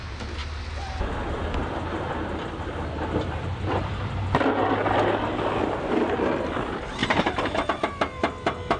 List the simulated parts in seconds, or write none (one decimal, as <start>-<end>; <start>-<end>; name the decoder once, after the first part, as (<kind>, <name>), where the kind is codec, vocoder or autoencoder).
7.0-7.6 (vocoder, BigVGAN v2)